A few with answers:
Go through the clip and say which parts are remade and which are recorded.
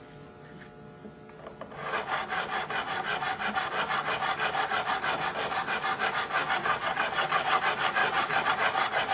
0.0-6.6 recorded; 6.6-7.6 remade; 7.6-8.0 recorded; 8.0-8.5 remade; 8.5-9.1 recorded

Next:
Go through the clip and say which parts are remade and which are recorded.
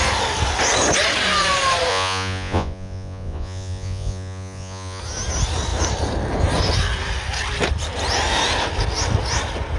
0.0-1.9 recorded; 1.9-5.0 remade; 5.0-9.8 recorded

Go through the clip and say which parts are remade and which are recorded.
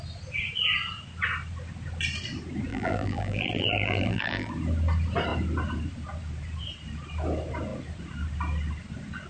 0.0-2.7 recorded; 2.7-4.5 remade; 4.5-9.3 recorded